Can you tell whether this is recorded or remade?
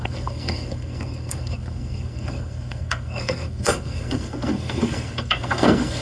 remade